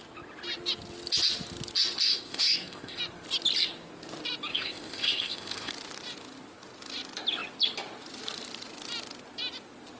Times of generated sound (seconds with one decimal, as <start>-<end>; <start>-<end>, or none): 2.1-3.0; 4.5-5.7